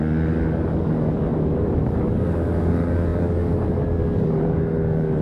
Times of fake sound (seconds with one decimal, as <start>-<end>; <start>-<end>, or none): 0.0-5.2